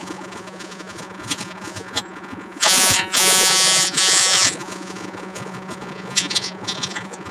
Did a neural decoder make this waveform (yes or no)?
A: yes